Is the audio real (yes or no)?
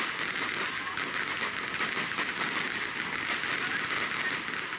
yes